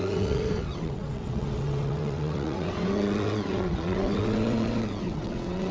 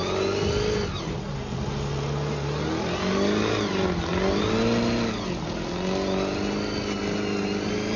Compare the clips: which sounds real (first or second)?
second